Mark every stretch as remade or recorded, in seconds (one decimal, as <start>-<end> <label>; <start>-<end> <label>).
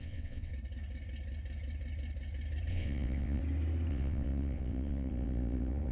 0.0-0.5 remade; 0.5-2.7 recorded; 2.7-3.4 remade; 3.4-3.9 recorded; 3.9-5.9 remade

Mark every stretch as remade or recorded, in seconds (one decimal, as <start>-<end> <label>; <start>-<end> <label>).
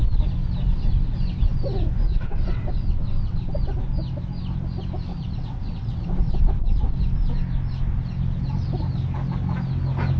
0.0-2.1 recorded; 2.1-3.6 remade; 3.6-5.1 recorded; 5.1-6.4 remade; 6.4-10.2 recorded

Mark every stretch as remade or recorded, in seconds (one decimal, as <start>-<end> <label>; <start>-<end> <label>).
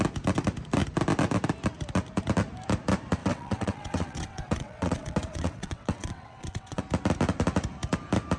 0.0-3.2 recorded; 3.2-6.8 remade; 6.8-8.4 recorded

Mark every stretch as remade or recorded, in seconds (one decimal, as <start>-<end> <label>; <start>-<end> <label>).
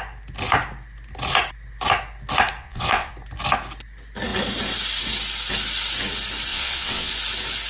0.0-2.6 recorded; 2.6-3.1 remade; 3.1-6.5 recorded; 6.5-7.1 remade; 7.1-7.7 recorded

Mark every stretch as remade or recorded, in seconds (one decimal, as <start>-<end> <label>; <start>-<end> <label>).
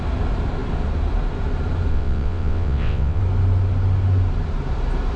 0.0-1.9 recorded; 1.9-3.2 remade; 3.2-5.2 recorded